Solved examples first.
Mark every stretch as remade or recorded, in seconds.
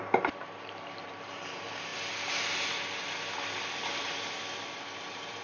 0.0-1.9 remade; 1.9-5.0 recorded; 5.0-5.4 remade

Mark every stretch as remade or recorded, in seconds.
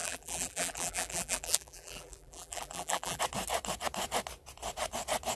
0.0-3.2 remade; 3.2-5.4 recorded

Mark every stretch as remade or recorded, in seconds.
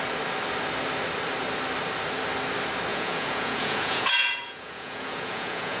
0.0-2.9 recorded; 2.9-5.8 remade